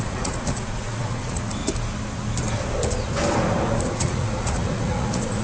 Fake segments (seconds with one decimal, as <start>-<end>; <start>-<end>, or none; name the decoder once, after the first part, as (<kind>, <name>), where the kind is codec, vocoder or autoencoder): 0.0-1.6 (vocoder, Vocos); 3.8-5.4